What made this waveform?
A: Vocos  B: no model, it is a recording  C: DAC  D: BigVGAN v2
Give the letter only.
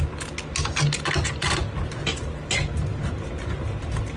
B